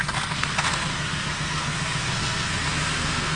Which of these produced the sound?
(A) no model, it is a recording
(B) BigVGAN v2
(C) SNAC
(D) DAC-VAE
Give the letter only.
C